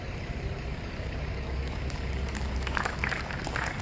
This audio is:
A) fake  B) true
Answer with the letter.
A